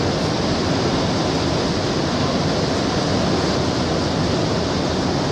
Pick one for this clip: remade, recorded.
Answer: recorded